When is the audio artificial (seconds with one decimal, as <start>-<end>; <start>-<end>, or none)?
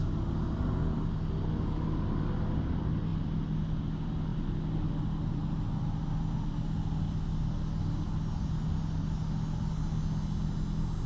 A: none